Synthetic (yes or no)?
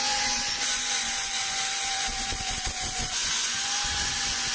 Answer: yes